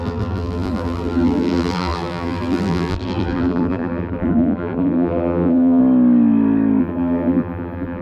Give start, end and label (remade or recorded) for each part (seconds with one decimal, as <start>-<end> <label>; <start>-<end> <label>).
0.0-5.8 remade; 5.8-6.8 recorded; 6.8-8.0 remade